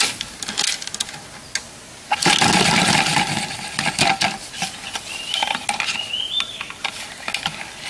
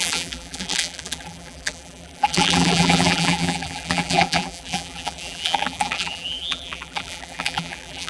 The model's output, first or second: second